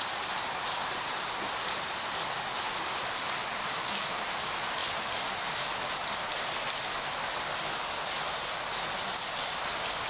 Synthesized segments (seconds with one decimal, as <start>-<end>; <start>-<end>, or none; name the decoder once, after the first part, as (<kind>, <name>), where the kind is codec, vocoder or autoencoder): none